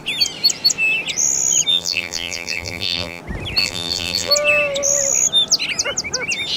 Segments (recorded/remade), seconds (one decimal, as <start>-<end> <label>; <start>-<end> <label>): 0.0-1.7 recorded; 1.7-3.2 remade; 3.2-3.6 recorded; 3.6-4.3 remade; 4.3-6.6 recorded